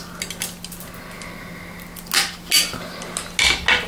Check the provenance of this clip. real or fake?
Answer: real